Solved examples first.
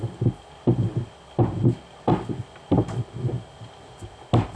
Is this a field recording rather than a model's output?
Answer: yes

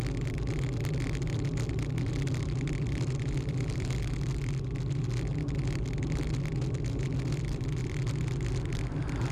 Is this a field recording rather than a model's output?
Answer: yes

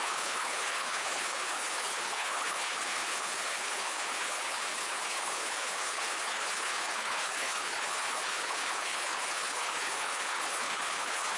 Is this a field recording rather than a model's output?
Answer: no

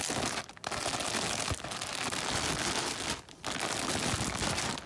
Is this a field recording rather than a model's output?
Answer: yes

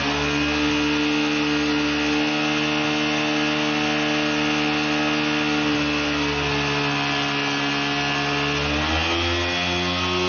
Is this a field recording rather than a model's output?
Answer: yes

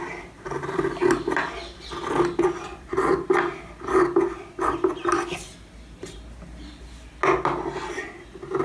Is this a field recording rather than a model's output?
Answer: yes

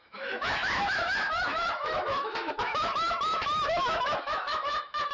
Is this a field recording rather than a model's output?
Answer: no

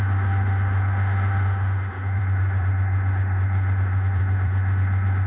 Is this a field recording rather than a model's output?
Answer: no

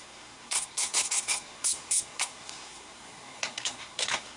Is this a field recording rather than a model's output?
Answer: no